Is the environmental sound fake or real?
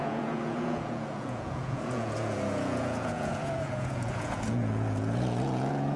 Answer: fake